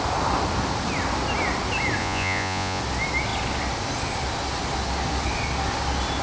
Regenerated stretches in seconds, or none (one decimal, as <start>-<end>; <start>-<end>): 2.0-2.8